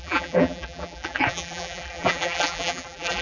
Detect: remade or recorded remade